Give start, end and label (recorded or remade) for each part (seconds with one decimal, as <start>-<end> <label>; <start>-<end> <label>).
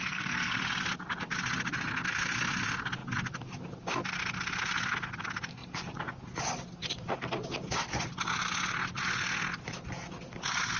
0.0-0.5 remade; 0.5-10.8 recorded